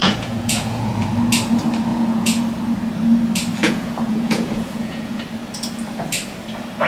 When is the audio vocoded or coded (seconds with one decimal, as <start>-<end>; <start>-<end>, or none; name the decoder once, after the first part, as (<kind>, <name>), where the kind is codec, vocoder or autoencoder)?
0.0-0.9 (vocoder, Vocos); 1.9-2.4; 3.6-5.2